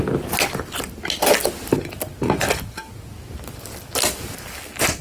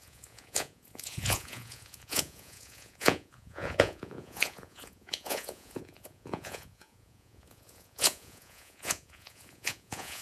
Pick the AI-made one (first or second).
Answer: second